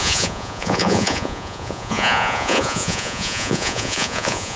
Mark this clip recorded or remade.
remade